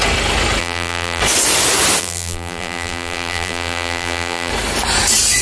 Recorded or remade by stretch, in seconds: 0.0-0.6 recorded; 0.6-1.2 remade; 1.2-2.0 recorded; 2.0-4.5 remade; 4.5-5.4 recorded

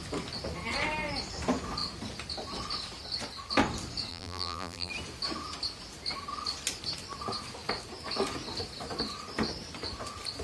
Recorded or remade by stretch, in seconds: 0.0-4.1 recorded; 4.1-4.9 remade; 4.9-10.4 recorded

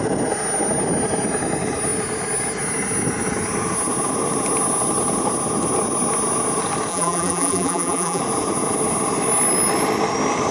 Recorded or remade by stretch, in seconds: 0.0-6.9 recorded; 6.9-8.2 remade; 8.2-10.5 recorded

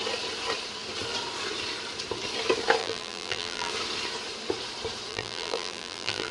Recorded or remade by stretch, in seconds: 0.0-2.8 recorded; 2.8-3.7 remade; 3.7-5.1 recorded; 5.1-6.3 remade

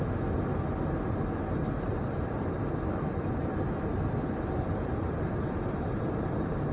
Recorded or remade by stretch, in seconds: 0.0-1.6 recorded; 1.6-5.6 remade; 5.6-6.7 recorded